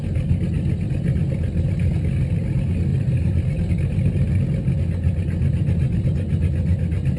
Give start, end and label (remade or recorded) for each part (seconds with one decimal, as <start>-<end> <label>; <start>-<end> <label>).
0.0-2.9 recorded; 2.9-3.7 remade; 3.7-7.2 recorded

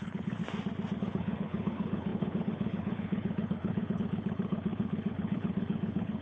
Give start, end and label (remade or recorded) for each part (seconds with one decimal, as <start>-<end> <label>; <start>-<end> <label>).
0.0-0.4 remade; 0.4-1.0 recorded; 1.0-6.2 remade

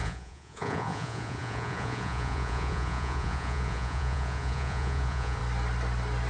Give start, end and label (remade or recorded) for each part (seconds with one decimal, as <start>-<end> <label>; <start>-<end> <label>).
0.0-5.4 remade; 5.4-6.3 recorded

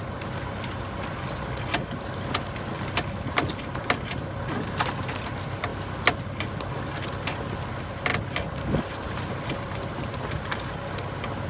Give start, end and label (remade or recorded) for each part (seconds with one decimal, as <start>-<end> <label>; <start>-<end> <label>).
0.0-11.5 recorded

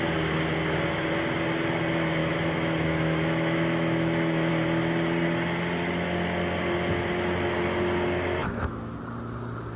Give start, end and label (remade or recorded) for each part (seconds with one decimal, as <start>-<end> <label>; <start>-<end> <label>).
0.0-2.2 recorded; 2.2-4.5 remade; 4.5-8.4 recorded; 8.4-9.0 remade; 9.0-9.8 recorded

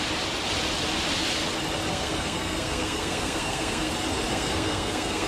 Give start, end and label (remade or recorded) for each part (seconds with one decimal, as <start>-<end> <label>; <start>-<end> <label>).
0.0-1.9 recorded; 1.9-3.9 remade; 3.9-4.3 recorded; 4.3-5.3 remade

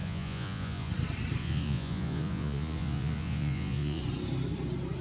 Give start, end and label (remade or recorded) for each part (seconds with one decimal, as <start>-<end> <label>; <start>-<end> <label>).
0.0-0.9 remade; 0.9-1.4 recorded; 1.4-4.0 remade; 4.0-5.0 recorded